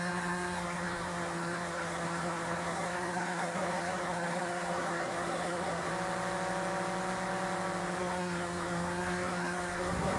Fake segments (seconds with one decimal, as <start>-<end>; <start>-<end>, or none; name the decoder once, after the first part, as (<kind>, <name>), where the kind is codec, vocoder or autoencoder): 0.0-5.9 (codec, SNAC); 8.0-10.2

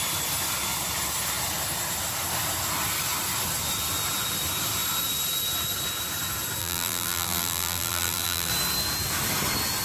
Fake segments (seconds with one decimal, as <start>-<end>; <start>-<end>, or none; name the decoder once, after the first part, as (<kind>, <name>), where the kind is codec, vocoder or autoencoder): 6.6-8.5 (vocoder, BigVGAN v2)

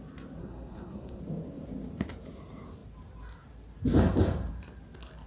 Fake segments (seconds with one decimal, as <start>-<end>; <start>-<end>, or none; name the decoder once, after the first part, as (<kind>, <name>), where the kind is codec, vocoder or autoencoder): 0.4-1.2 (codec, SNAC)

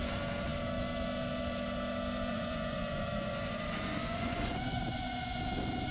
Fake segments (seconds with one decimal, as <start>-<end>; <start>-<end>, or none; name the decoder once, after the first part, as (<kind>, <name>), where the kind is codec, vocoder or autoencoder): 2.3-5.4 (vocoder, Vocos)

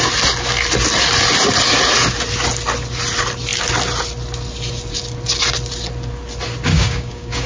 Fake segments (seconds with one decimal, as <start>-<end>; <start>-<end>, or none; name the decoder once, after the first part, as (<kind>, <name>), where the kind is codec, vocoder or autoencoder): 6.7-7.5 (codec, DAC)

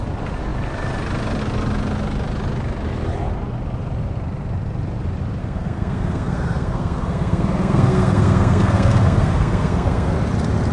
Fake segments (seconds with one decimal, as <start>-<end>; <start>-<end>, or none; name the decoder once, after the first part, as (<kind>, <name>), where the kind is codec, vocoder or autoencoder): 5.4-10.1 (codec, SNAC)

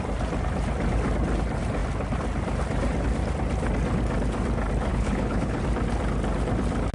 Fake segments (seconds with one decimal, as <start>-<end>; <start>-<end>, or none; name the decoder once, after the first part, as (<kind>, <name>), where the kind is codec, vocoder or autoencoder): 4.9-5.6 (codec, HILCodec)